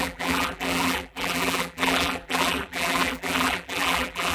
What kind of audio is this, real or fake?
fake